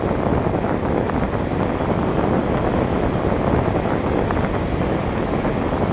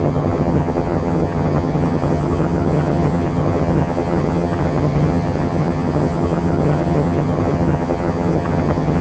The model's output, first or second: second